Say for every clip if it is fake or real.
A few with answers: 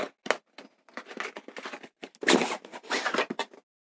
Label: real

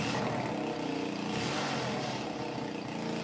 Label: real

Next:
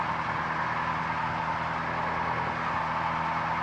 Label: real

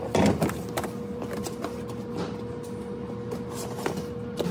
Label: real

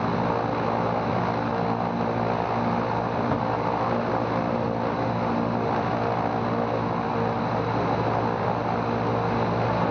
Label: real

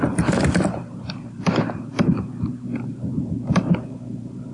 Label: fake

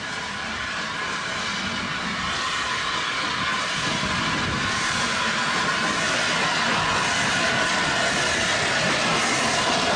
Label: real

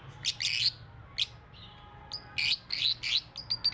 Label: real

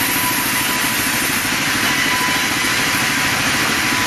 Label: real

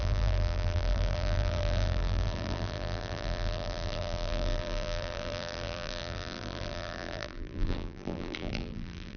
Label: fake